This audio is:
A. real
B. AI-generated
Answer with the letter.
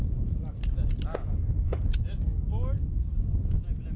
A